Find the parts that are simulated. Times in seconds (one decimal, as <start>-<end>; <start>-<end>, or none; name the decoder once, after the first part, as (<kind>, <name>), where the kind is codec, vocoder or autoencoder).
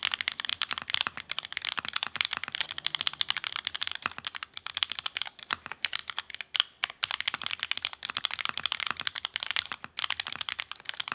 0.0-6.0 (vocoder, BigVGAN v2); 8.1-11.1